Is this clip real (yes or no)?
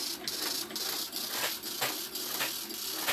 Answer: yes